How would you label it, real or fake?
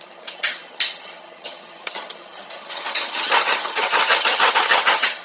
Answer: fake